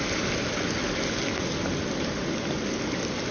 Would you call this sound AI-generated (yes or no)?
no